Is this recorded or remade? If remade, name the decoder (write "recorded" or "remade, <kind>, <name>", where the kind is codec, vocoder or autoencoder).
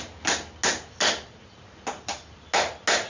recorded